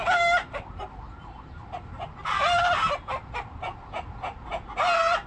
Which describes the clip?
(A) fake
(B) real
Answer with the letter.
B